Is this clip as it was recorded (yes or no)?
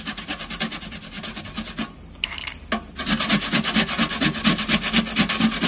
yes